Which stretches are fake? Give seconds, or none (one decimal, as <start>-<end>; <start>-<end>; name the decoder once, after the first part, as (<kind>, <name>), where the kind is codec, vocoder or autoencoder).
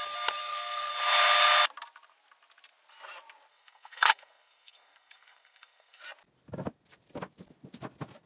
0.4-0.9 (codec, SNAC); 3.5-6.0